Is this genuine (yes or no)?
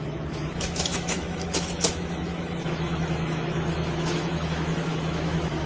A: no